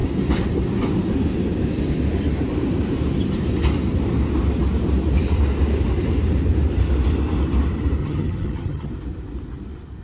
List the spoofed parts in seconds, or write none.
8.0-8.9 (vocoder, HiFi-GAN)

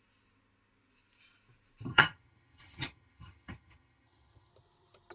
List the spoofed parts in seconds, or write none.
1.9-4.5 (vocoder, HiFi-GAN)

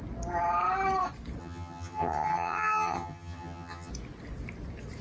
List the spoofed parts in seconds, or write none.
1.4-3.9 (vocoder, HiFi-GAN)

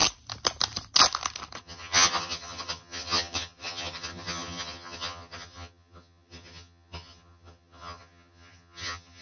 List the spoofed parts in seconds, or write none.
1.6-9.2 (vocoder, HiFi-GAN)